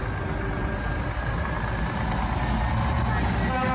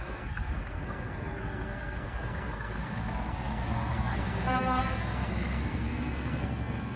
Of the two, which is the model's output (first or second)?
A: second